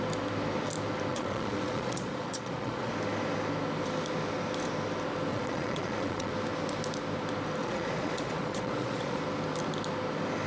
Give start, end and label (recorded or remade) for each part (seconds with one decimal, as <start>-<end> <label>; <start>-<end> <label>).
0.0-1.1 recorded; 1.1-2.9 remade; 2.9-5.3 recorded; 5.3-6.3 remade; 6.3-7.6 recorded; 7.6-9.2 remade; 9.2-10.5 recorded